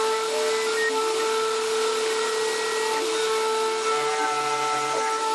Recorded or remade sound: recorded